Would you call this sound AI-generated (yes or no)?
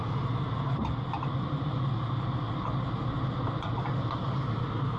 no